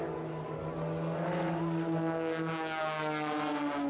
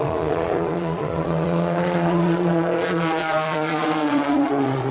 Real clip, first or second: first